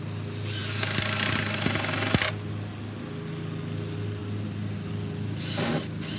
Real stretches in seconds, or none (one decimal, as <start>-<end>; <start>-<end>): 0.0-6.2